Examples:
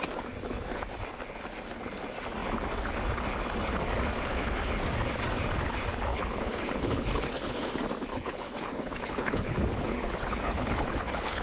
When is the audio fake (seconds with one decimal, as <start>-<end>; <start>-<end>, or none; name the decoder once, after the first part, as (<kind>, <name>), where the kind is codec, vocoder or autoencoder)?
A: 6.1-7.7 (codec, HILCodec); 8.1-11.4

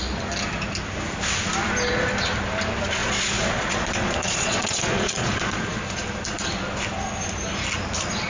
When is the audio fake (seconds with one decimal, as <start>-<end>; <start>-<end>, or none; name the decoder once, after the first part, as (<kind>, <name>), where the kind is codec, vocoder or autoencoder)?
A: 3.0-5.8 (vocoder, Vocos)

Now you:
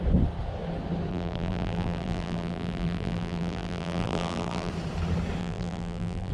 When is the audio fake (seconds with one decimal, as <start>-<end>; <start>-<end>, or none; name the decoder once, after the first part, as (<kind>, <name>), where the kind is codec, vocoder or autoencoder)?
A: 1.1-4.7 (vocoder, BigVGAN v2); 5.4-6.3

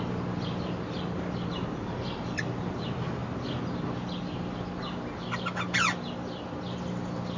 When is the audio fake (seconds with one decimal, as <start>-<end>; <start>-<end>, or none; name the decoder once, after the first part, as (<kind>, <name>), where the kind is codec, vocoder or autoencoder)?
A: none

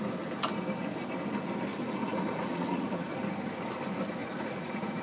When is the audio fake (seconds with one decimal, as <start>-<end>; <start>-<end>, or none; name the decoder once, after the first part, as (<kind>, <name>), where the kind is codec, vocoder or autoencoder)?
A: 1.7-3.1 (vocoder, Vocos); 4.2-5.0